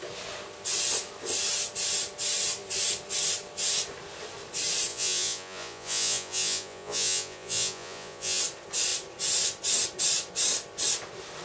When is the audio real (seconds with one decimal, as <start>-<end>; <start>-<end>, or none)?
0.0-4.9; 8.4-11.4

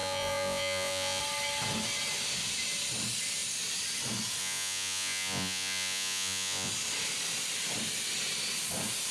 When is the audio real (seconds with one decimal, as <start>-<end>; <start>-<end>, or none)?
1.2-4.4; 6.7-9.1

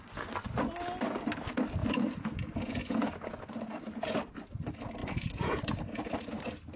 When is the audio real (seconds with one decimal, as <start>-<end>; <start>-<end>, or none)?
0.0-1.8; 4.2-5.0; 6.3-6.8